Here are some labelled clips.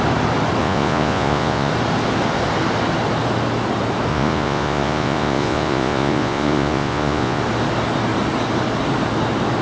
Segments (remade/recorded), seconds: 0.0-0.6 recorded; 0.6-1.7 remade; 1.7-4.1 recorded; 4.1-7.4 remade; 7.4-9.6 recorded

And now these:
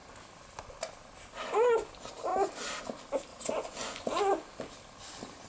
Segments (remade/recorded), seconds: 0.0-3.3 recorded; 3.3-4.3 remade; 4.3-5.5 recorded

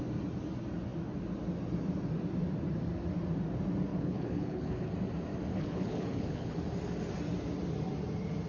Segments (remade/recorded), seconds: 0.0-3.9 recorded; 3.9-4.9 remade; 4.9-5.5 recorded; 5.5-6.6 remade; 6.6-8.5 recorded

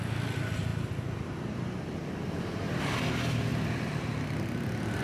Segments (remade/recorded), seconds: 0.0-0.7 remade; 0.7-2.8 recorded; 2.8-3.5 remade; 3.5-5.0 recorded

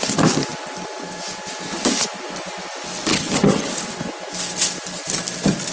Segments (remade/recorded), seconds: 0.0-3.1 recorded; 3.1-3.7 remade; 3.7-5.7 recorded